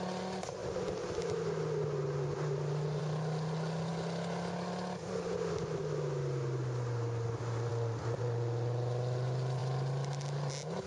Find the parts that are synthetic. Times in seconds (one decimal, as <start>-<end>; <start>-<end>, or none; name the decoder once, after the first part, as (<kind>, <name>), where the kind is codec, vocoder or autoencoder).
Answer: none